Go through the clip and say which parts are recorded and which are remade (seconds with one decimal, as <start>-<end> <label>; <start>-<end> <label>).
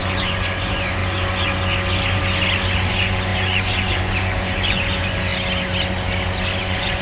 0.0-1.0 remade; 1.0-2.9 recorded; 2.9-5.3 remade; 5.3-6.6 recorded; 6.6-7.0 remade